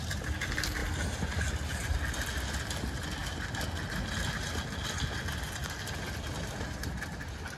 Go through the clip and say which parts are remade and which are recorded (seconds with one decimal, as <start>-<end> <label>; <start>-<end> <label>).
0.0-7.6 recorded